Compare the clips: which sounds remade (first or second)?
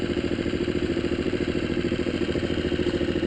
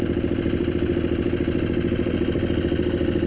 first